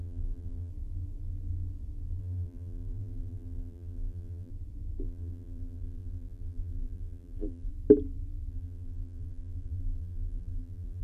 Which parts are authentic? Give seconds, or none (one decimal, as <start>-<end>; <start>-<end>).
0.7-2.2; 4.5-5.0; 7.7-8.5